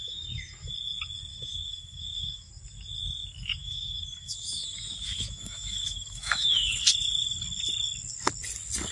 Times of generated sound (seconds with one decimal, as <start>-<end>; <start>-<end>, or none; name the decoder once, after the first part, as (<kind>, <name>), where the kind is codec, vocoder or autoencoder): 0.0-0.7 (autoencoder, DAC-VAE); 1.3-2.5; 3.6-6.8